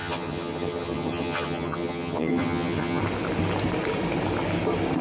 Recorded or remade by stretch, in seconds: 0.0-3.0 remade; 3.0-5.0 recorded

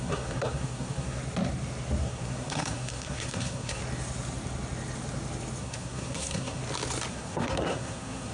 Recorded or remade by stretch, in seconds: 0.0-1.2 remade; 1.2-2.0 recorded; 2.0-3.8 remade; 3.8-5.6 recorded; 5.6-6.6 remade; 6.6-7.1 recorded; 7.1-8.3 remade

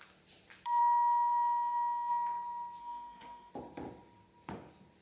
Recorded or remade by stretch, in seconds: 0.0-0.8 recorded; 0.8-2.1 remade; 2.1-2.8 recorded; 2.8-3.5 remade; 3.5-5.0 recorded

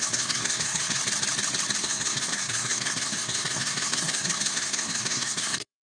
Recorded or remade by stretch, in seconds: 0.0-1.0 remade; 1.0-1.8 recorded; 1.8-5.8 remade

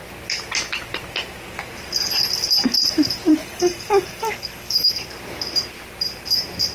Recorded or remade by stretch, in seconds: 0.0-3.3 recorded; 3.3-4.9 remade; 4.9-6.7 recorded

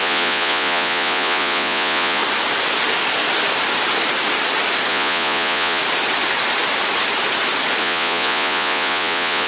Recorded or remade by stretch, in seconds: 0.0-2.2 remade; 2.2-4.9 recorded; 4.9-5.8 remade; 5.8-7.8 recorded; 7.8-9.5 remade

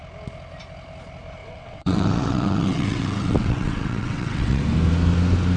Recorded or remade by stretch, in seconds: 0.0-1.4 recorded; 1.4-4.6 remade; 4.6-5.6 recorded